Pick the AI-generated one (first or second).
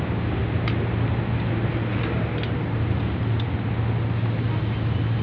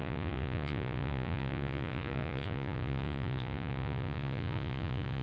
second